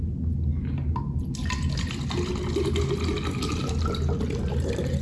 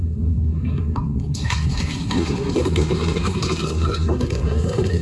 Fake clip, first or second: second